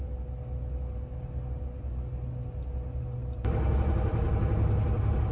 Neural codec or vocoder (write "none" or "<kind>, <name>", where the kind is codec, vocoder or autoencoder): none